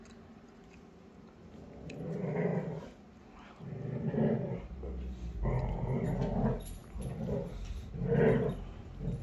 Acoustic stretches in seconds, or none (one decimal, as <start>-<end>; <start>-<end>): 0.0-9.2